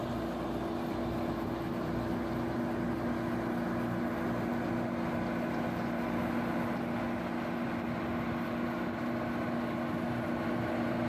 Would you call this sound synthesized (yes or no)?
no